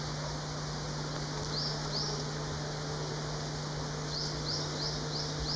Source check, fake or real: real